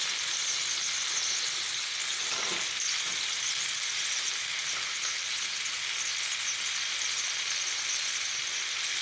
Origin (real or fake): real